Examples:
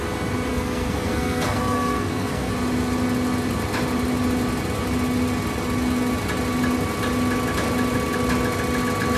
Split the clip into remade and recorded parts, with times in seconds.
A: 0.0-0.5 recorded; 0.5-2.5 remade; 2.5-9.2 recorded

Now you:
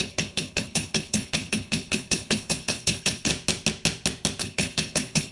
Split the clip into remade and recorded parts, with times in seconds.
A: 0.0-3.3 remade; 3.3-4.4 recorded; 4.4-5.3 remade

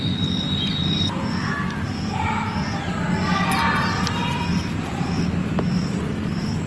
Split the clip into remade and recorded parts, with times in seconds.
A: 0.0-6.7 recorded

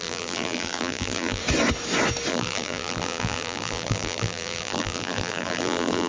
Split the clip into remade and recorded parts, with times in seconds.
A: 0.0-1.4 remade; 1.4-2.3 recorded; 2.3-6.1 remade

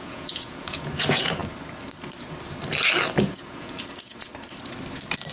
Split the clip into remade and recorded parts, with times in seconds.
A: 0.0-1.4 remade; 1.4-3.2 recorded; 3.2-4.3 remade; 4.3-5.3 recorded